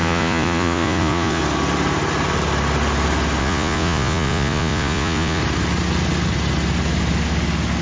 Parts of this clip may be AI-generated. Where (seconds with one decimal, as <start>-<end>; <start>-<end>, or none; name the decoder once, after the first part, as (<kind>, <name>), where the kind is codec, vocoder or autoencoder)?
0.0-1.4 (vocoder, Vocos); 3.4-5.4